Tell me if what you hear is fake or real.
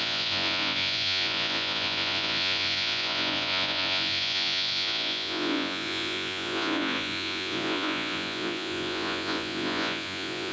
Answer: fake